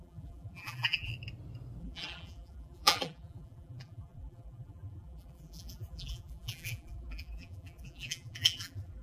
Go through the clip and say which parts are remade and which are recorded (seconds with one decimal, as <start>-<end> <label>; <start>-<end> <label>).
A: 0.0-1.1 remade; 1.1-1.8 recorded; 1.8-9.0 remade